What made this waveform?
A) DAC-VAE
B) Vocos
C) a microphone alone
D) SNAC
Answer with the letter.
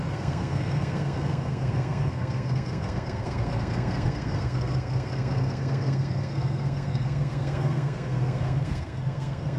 D